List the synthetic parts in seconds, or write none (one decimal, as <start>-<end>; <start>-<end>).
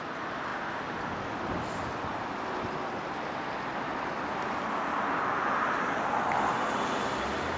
none